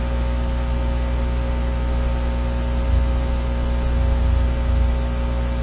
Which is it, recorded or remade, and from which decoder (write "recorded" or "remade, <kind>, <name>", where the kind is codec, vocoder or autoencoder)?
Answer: recorded